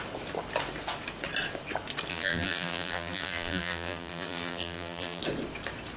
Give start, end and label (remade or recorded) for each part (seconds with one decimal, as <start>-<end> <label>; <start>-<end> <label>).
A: 0.0-2.1 recorded; 2.1-5.2 remade; 5.2-6.0 recorded